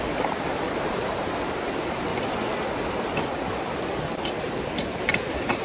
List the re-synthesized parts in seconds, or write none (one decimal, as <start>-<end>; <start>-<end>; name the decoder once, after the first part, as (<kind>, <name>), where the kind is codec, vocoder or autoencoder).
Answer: 0.0-2.1 (vocoder, BigVGAN v2); 4.4-5.6